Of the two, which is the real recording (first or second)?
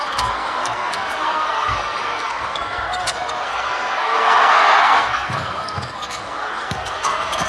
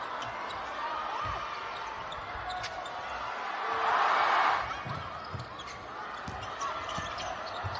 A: second